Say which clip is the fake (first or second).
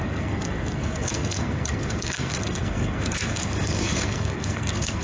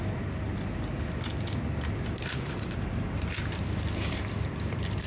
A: first